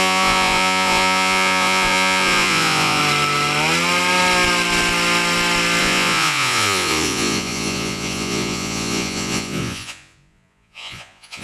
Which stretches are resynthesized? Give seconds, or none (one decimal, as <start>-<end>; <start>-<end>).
0.0-3.0; 5.8-11.4